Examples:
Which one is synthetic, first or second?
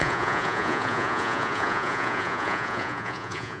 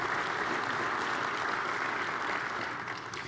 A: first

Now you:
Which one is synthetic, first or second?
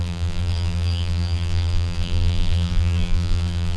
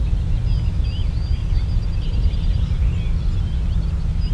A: first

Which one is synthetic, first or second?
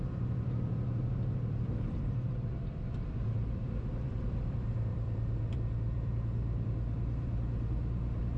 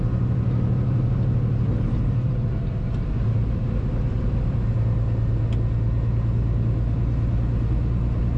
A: first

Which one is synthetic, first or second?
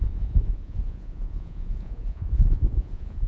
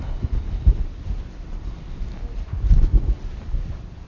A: first